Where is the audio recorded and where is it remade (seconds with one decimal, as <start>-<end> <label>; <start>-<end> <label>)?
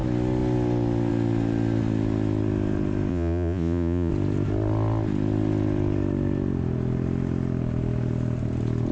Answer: 0.0-3.1 recorded; 3.1-4.1 remade; 4.1-8.9 recorded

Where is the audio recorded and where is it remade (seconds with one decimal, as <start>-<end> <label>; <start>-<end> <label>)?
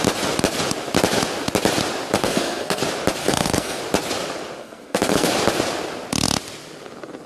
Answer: 0.0-2.2 recorded; 2.2-2.8 remade; 2.8-3.2 recorded; 3.2-3.8 remade; 3.8-4.6 recorded; 4.6-5.3 remade; 5.3-7.3 recorded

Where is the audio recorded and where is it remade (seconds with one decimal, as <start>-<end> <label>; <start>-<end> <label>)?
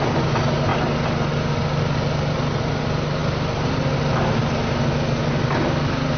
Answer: 0.0-6.2 recorded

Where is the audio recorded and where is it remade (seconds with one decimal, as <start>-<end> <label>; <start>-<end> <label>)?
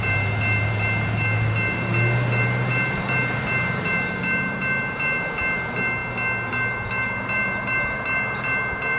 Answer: 0.0-6.0 remade; 6.0-6.5 recorded; 6.5-9.0 remade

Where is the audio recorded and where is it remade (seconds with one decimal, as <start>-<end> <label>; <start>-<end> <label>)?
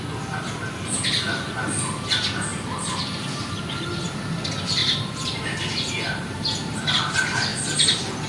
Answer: 0.0-2.5 recorded; 2.5-3.8 remade; 3.8-4.8 recorded; 4.8-6.9 remade; 6.9-8.3 recorded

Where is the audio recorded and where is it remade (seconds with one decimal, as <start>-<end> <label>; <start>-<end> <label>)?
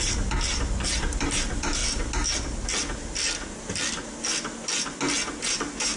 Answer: 0.0-1.8 remade; 1.8-5.4 recorded; 5.4-6.0 remade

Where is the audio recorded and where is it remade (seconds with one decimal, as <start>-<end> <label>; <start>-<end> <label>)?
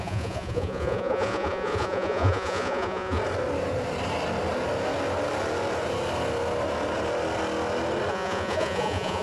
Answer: 0.0-3.2 remade; 3.2-8.1 recorded; 8.1-9.2 remade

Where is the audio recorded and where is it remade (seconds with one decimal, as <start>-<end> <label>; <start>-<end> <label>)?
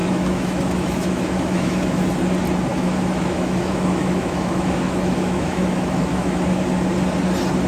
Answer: 0.0-2.0 remade; 2.0-2.7 recorded; 2.7-6.4 remade; 6.4-7.7 recorded